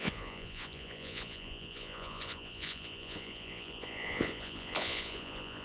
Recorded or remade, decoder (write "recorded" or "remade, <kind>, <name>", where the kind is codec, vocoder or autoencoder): remade, vocoder, Vocos